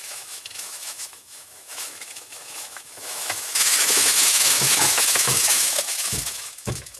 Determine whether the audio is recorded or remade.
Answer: remade